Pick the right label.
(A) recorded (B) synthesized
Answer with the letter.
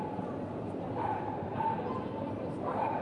A